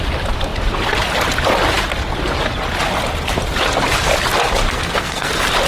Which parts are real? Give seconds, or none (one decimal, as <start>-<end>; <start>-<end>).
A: 0.0-4.7; 5.3-5.7